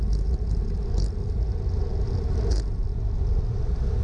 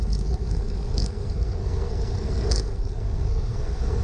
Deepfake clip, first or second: second